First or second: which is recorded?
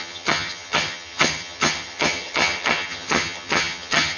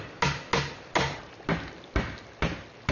second